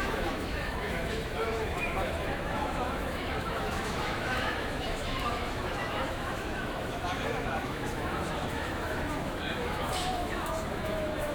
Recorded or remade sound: remade